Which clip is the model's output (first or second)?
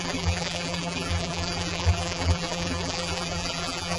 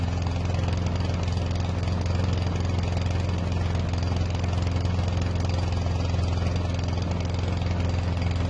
first